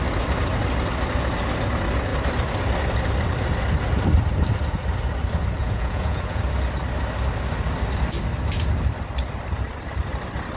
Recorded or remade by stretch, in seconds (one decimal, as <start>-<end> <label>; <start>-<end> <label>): 0.0-5.6 recorded; 5.6-6.4 remade; 6.4-10.6 recorded